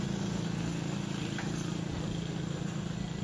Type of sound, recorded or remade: recorded